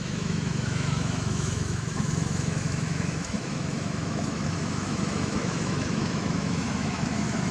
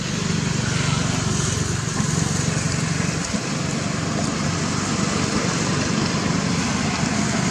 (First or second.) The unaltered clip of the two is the second